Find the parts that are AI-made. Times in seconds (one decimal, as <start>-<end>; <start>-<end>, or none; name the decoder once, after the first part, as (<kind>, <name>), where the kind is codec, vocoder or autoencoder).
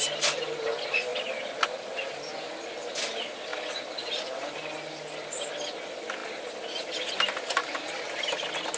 none